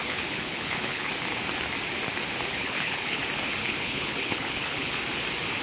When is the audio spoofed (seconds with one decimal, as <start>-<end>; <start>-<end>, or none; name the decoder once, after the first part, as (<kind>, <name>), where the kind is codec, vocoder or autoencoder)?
0.0-1.1 (codec, HILCodec); 2.5-3.2; 3.6-4.9